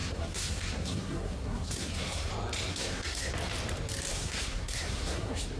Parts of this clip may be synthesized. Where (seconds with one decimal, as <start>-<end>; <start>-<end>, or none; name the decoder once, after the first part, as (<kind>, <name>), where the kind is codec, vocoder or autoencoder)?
0.0-2.3 (codec, SNAC); 2.7-3.3; 4.1-5.6